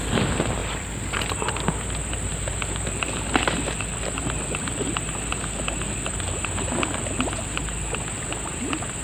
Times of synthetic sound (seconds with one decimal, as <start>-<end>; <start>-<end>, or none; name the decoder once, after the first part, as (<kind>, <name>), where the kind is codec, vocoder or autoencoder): 2.3-7.6 (vocoder, BigVGAN v2)